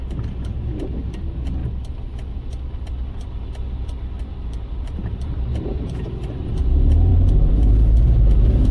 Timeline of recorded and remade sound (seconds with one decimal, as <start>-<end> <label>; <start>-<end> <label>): 0.0-1.6 remade; 1.6-4.2 recorded; 4.2-8.7 remade